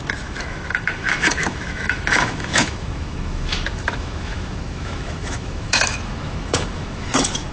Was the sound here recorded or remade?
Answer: remade